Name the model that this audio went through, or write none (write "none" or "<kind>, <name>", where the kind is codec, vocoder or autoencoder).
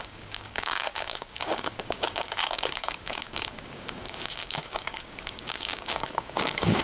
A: codec, DAC